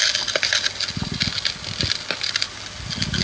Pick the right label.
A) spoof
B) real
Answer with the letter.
B